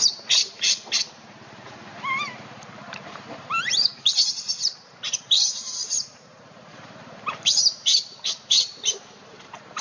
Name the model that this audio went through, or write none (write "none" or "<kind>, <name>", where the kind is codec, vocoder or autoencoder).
vocoder, BigVGAN v2